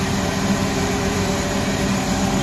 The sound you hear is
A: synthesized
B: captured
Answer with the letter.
A